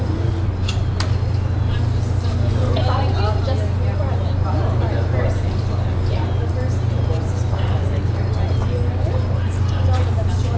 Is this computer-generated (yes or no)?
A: no